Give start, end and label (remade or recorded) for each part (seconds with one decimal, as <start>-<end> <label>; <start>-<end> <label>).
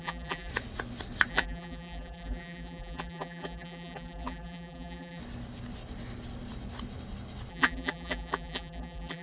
0.0-0.5 remade; 0.5-1.3 recorded; 1.3-5.2 remade; 5.2-7.5 recorded; 7.5-9.2 remade